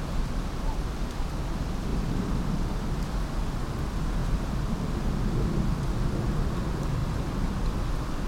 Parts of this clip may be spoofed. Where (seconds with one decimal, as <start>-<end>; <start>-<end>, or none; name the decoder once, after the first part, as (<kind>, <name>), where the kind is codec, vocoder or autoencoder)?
4.2-4.8 (vocoder, BigVGAN v2); 7.0-7.9